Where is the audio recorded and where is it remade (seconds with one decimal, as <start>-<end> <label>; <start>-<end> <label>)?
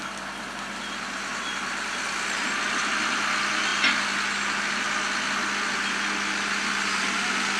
0.0-7.6 recorded